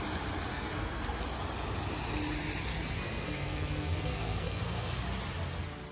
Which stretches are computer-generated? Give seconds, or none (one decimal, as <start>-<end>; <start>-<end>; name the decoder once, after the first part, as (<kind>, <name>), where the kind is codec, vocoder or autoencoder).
0.5-1.2 (codec, SNAC); 2.7-5.0